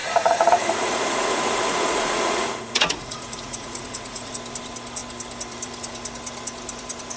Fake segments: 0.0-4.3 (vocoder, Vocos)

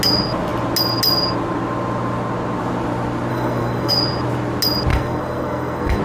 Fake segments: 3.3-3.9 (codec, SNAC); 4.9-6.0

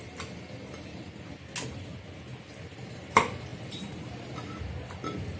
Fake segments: none

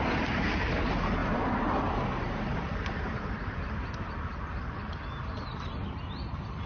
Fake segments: 0.0-4.5 (vocoder, BigVGAN v2)

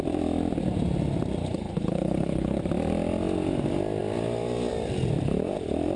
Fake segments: 1.4-2.6 (codec, HILCodec)

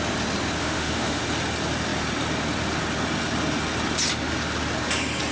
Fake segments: 0.6-1.2 (autoencoder, DAC-VAE)

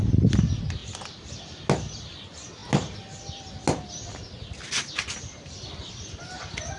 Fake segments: none